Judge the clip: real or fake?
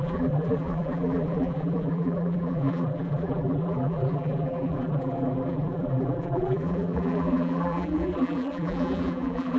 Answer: fake